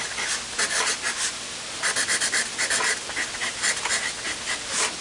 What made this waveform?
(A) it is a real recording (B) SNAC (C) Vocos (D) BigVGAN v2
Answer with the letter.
A